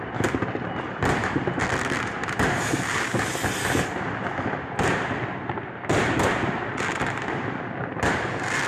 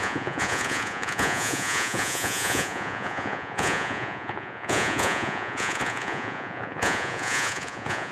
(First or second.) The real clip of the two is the first